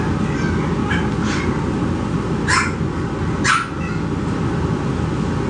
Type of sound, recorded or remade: recorded